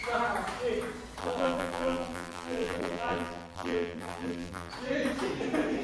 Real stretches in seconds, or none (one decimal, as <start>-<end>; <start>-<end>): 0.0-1.2; 4.7-5.8